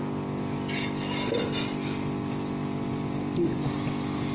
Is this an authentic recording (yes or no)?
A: yes